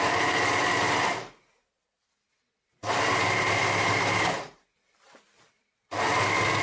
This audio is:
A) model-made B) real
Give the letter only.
B